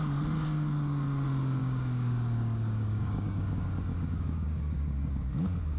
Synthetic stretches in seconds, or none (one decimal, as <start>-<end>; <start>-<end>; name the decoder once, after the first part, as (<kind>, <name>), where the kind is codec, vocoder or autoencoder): 1.6-5.1 (codec, DAC)